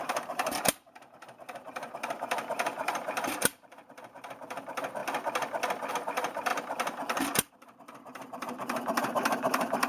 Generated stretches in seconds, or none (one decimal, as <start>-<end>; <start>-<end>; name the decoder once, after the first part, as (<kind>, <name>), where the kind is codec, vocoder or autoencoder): 0.0-5.0 (vocoder, BigVGAN v2); 5.9-6.5; 7.5-9.9